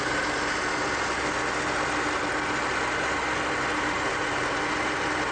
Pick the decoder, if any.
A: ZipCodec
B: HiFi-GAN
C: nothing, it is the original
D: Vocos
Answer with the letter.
C